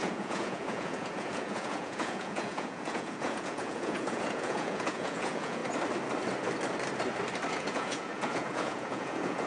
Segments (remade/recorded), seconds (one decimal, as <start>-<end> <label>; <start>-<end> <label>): 0.0-5.6 remade; 5.6-7.5 recorded; 7.5-9.5 remade